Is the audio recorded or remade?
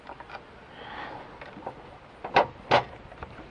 recorded